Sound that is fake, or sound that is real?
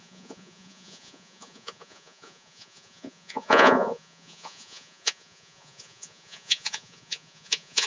fake